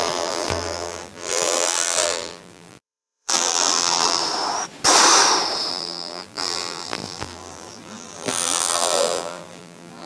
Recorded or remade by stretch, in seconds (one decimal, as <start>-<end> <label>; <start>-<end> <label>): 0.0-4.2 remade; 4.2-5.7 recorded; 5.7-10.1 remade